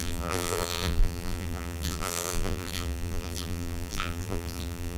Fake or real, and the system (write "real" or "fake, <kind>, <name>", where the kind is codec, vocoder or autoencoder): fake, vocoder, BigVGAN v2